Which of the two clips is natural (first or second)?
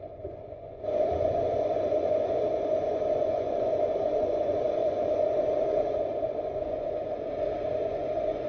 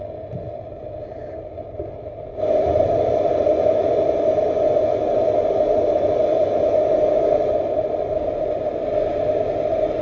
second